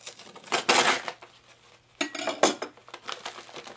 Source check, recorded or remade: recorded